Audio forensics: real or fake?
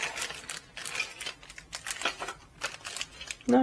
real